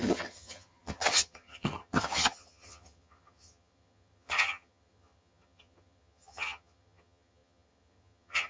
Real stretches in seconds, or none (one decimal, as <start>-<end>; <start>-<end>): none